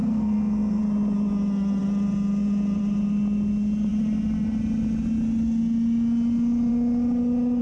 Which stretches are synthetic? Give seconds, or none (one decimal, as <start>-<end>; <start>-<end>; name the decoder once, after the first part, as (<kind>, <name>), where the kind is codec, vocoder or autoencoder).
0.0-0.8 (codec, SNAC)